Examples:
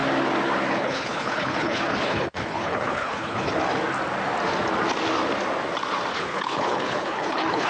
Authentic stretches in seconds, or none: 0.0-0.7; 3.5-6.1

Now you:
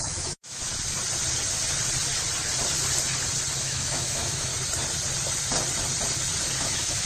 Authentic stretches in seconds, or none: 0.7-3.6; 4.5-6.6

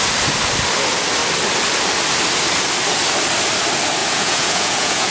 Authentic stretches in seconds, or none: 0.0-4.0

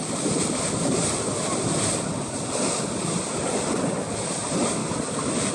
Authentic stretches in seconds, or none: 0.0-5.5